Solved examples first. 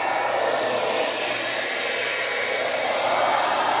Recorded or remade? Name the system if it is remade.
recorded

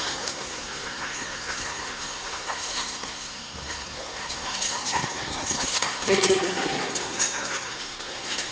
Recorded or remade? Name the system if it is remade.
remade, codec, SNAC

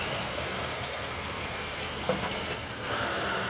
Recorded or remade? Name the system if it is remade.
remade, codec, SNAC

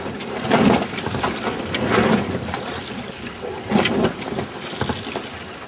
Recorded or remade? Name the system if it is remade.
recorded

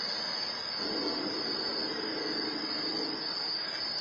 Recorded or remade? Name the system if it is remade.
recorded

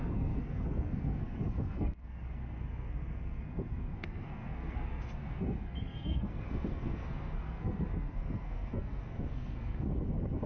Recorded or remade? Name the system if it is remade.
remade, codec, SNAC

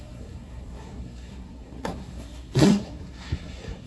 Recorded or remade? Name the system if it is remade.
remade, codec, SNAC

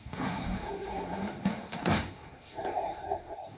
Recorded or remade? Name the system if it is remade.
remade, codec, SNAC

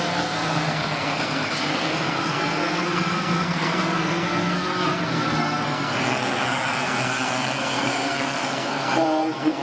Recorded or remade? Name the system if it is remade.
remade, codec, SNAC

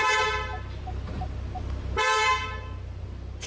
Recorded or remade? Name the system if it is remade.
recorded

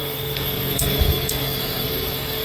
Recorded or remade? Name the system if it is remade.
remade, codec, SNAC